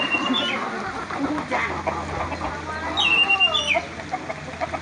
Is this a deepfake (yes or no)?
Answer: no